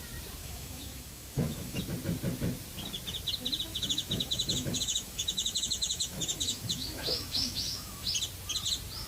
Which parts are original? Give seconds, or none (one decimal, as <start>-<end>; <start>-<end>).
0.0-0.4; 1.8-3.7; 8.1-9.1